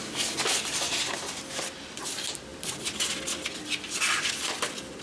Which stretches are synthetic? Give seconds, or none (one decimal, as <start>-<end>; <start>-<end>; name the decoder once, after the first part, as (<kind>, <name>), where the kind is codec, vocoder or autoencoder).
none